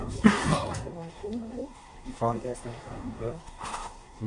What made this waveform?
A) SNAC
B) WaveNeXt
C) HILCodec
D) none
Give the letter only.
A